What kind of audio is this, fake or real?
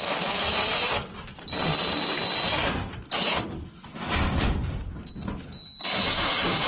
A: real